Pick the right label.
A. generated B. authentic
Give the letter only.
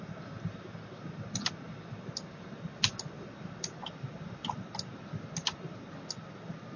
B